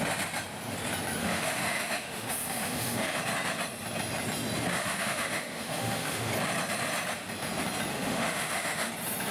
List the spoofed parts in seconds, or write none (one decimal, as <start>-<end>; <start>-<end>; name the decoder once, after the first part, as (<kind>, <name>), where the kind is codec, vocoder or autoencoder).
1.2-3.2 (autoencoder, DAC-VAE); 4.7-6.3; 7.9-8.9